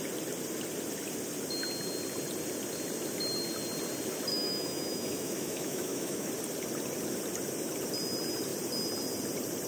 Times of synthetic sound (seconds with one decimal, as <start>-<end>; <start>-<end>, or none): 4.3-6.3

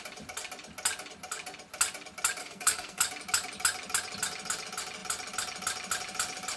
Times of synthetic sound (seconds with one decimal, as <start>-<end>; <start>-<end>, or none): 2.4-3.0

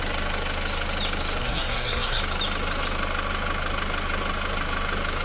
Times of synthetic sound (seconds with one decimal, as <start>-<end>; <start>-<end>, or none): 1.4-2.2

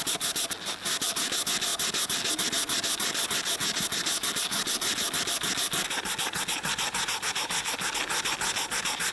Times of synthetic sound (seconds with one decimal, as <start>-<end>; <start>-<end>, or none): none